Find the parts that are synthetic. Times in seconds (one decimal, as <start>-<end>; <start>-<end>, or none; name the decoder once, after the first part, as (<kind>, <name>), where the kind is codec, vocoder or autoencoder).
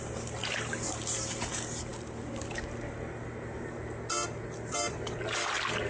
none